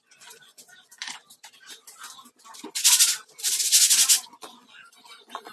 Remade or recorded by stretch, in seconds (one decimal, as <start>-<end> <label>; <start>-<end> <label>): 0.0-1.2 remade; 1.2-3.6 recorded; 3.6-5.5 remade